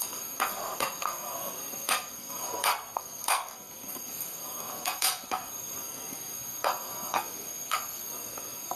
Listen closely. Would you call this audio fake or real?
fake